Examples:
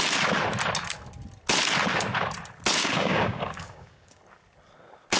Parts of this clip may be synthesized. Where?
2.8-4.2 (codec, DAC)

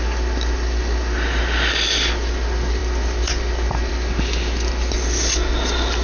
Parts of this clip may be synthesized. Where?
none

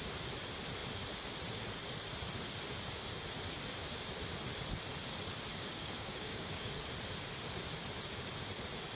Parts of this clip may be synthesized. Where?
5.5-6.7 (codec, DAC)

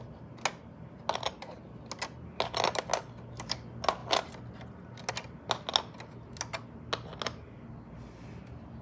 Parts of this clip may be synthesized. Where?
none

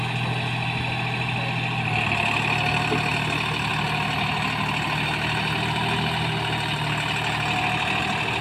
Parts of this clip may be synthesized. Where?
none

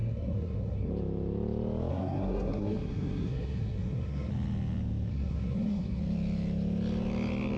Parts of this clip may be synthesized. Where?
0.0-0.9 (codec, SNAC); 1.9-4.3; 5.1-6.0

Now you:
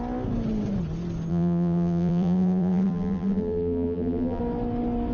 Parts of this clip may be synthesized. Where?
1.3-4.4 (vocoder, BigVGAN v2)